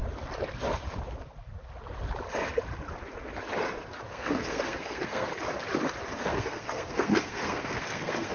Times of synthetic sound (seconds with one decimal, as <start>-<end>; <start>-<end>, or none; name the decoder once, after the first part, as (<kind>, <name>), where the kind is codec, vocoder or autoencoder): 4.1-5.3 (codec, SNAC); 6.1-8.3

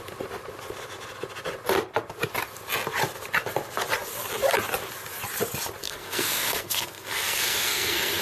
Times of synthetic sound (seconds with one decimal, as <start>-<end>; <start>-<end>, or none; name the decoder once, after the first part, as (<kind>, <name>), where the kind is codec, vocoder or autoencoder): 5.8-8.2 (codec, SNAC)

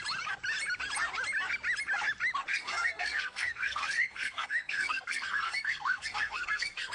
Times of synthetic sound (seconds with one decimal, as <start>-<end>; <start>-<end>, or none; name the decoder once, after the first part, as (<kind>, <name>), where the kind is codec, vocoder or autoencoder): 2.5-6.9 (codec, SNAC)

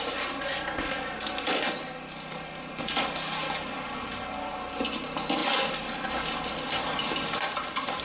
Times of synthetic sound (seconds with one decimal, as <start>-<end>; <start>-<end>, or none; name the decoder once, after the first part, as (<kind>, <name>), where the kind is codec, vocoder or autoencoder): none